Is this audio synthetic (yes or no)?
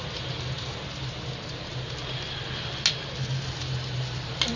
no